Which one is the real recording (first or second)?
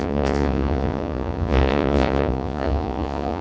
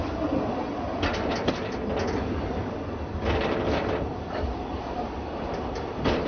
second